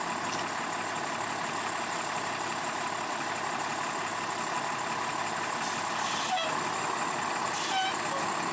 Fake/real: real